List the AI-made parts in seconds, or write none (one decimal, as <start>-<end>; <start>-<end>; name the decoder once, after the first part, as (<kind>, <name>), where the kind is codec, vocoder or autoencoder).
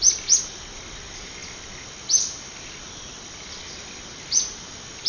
none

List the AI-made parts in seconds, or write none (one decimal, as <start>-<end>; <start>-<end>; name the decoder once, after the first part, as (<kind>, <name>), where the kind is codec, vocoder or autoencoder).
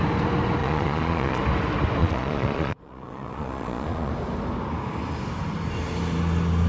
0.6-1.4 (vocoder, Vocos); 2.0-4.1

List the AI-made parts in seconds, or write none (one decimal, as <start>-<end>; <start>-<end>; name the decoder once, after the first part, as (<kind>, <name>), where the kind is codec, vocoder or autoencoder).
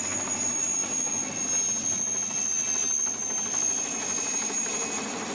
none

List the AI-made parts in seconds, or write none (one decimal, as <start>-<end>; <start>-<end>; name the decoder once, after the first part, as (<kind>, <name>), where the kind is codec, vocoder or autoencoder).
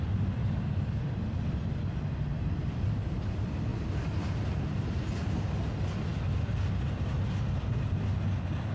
none